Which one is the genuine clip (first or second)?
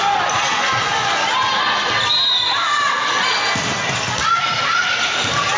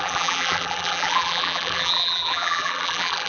first